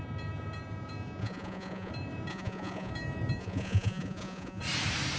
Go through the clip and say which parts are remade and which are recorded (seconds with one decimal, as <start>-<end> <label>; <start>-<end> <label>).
0.0-1.2 recorded; 1.2-1.9 remade; 1.9-2.3 recorded; 2.3-2.9 remade; 2.9-3.4 recorded; 3.4-4.6 remade; 4.6-5.2 recorded